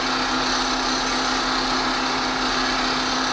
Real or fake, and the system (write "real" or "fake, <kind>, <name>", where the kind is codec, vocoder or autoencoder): real